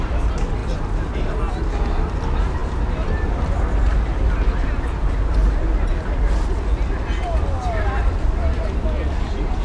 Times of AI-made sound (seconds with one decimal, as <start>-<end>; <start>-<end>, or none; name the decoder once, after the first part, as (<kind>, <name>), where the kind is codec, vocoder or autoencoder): none